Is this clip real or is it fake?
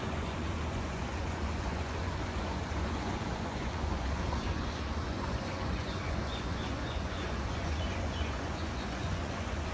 fake